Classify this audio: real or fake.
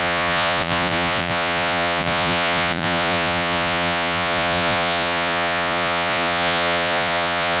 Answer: fake